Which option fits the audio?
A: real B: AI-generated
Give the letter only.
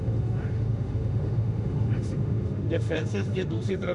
B